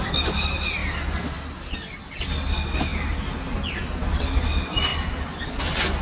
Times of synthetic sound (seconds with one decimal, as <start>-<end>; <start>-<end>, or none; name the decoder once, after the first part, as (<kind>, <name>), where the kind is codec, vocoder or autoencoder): none